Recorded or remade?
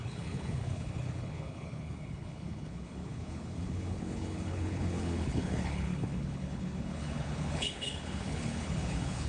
remade